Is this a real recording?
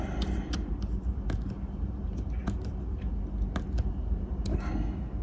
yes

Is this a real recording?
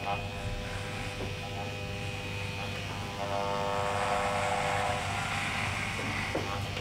yes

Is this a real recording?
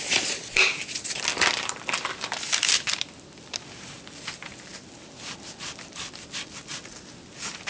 yes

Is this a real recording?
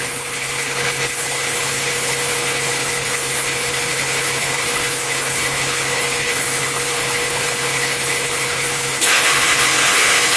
no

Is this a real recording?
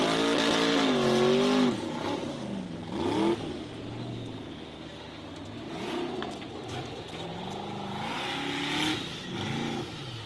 yes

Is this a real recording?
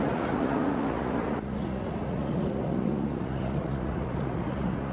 no